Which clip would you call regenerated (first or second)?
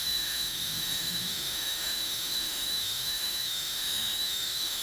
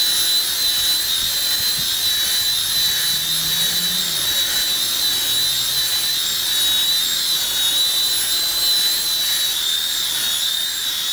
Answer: first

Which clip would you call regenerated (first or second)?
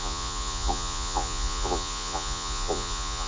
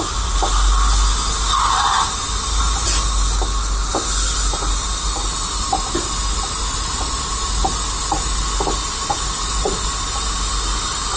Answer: first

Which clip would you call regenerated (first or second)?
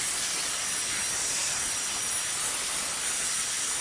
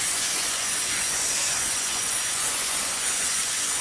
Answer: second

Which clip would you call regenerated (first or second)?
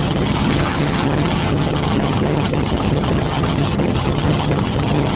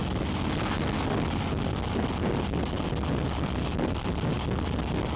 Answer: first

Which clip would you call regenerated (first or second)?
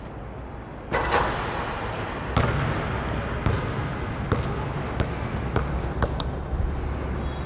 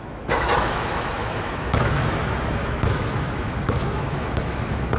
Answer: second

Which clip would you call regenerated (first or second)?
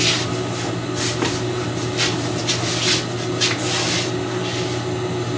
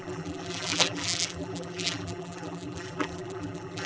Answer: second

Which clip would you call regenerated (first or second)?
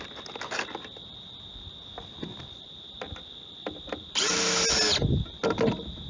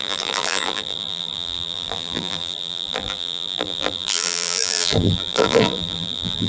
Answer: second